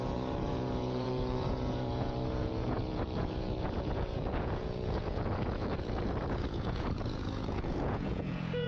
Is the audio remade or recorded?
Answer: remade